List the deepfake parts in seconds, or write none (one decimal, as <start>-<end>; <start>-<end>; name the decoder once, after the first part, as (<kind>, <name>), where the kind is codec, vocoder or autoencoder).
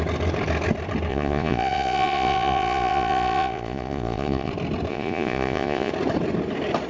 1.1-4.5 (vocoder, Vocos); 4.9-5.9